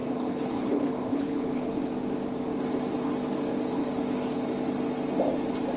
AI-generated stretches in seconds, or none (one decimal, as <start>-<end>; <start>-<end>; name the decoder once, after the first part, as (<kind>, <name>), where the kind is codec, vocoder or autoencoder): 0.0-1.8 (codec, HILCodec)